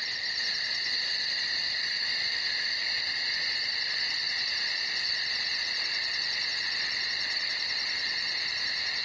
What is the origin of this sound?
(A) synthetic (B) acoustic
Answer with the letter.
B